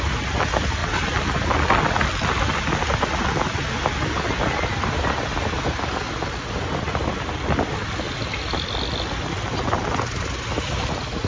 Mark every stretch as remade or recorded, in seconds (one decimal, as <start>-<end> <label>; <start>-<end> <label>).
0.0-11.3 recorded